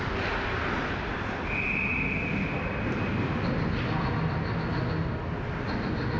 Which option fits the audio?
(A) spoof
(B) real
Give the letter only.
B